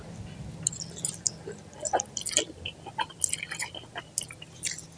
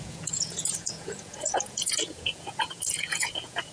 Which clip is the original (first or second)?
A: first